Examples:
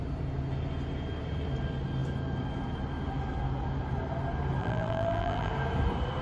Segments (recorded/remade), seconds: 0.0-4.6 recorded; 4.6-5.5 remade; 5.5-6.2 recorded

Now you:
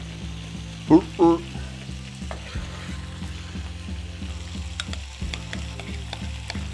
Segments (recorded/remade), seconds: 0.0-6.7 recorded

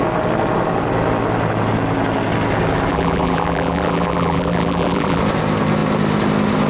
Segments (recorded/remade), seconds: 0.0-2.9 recorded; 2.9-5.2 remade; 5.2-6.7 recorded